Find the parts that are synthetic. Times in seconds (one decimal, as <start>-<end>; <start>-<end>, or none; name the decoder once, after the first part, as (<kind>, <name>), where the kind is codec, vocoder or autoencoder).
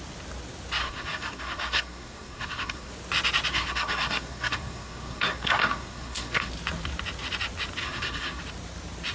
0.8-2.9 (codec, SNAC); 3.5-6.5; 7.8-8.4